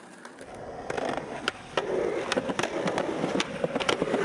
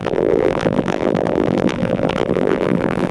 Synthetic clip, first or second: second